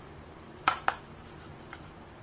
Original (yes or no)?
no